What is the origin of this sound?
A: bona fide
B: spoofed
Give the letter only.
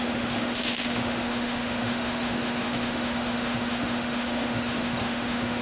B